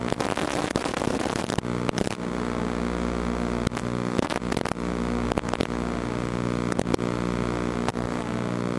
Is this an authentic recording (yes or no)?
yes